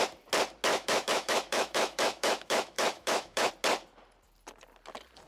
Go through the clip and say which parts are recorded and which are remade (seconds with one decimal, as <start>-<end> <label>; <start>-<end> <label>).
0.0-0.7 recorded; 0.7-3.5 remade; 3.5-5.3 recorded